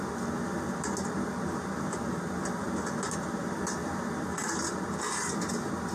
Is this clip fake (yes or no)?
no